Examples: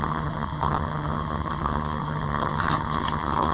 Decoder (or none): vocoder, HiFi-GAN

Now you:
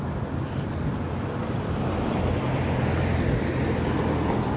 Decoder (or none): none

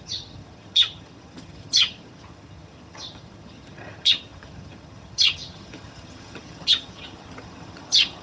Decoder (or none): vocoder, HiFi-GAN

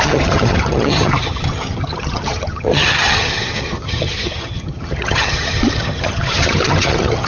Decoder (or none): vocoder, HiFi-GAN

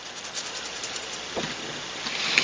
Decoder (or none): none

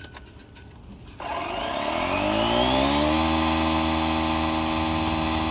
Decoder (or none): none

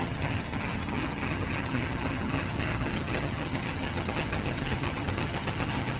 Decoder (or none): vocoder, HiFi-GAN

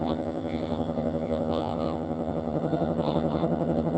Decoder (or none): vocoder, HiFi-GAN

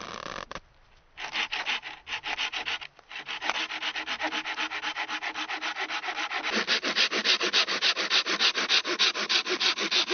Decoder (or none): none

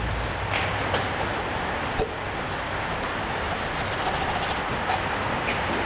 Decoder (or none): none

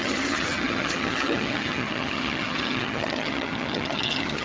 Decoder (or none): vocoder, HiFi-GAN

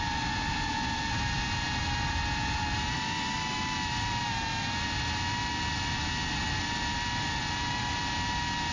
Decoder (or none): none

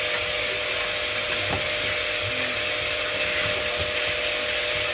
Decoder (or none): none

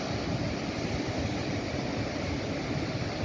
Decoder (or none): none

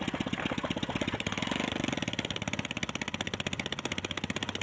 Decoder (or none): none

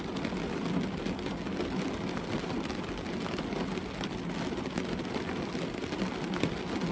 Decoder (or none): none